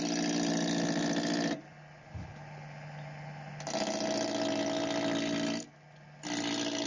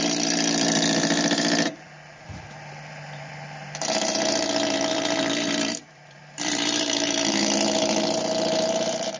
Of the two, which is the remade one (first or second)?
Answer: second